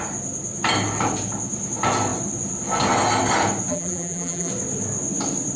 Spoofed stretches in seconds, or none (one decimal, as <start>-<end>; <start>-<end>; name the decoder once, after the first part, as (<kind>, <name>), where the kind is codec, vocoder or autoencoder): 3.7-4.5 (vocoder, BigVGAN v2)

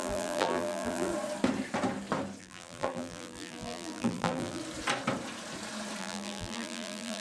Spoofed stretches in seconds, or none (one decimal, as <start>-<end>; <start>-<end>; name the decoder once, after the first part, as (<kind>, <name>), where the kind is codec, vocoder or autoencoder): 0.0-1.1 (vocoder, BigVGAN v2); 2.4-4.6; 6.0-7.2

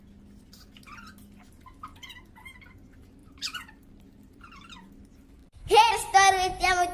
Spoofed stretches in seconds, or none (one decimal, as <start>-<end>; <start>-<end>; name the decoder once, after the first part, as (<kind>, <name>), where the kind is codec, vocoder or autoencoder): 3.2-4.7 (vocoder, BigVGAN v2)

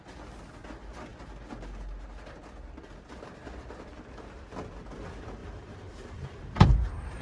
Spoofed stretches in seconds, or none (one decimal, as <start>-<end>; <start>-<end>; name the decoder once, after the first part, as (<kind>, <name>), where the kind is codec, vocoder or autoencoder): 5.4-7.2 (vocoder, BigVGAN v2)